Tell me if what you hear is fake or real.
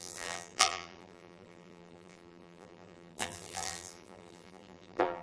fake